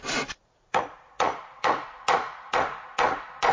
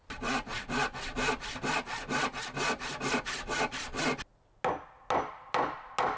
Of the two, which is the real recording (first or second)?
second